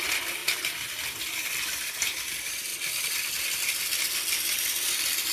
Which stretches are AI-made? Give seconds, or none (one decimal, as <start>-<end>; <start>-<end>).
none